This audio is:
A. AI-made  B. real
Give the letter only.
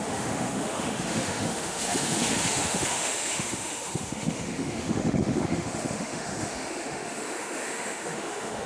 A